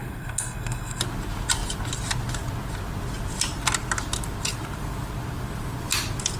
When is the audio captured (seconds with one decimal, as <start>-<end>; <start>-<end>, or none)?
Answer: 1.0-6.4